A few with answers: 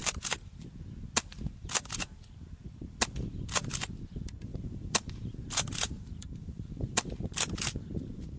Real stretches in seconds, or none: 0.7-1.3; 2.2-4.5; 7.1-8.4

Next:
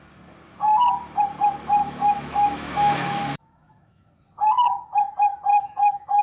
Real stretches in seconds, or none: 0.0-1.8; 4.1-5.5

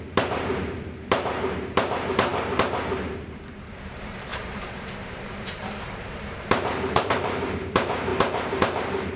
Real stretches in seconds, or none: 2.3-3.7